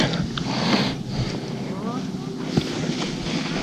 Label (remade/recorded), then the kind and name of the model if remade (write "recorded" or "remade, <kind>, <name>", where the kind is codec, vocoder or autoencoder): recorded